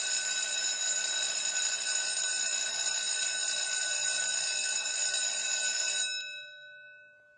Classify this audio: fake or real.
real